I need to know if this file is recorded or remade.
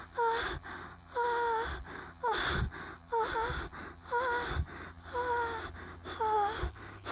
recorded